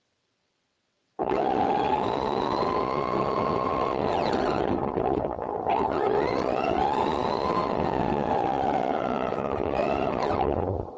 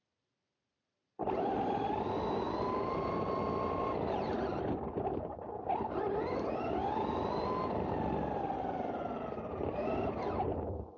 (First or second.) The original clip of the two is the second